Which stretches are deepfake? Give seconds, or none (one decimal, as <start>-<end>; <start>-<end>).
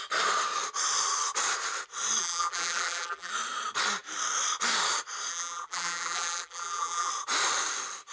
2.2-3.3; 5.3-7.1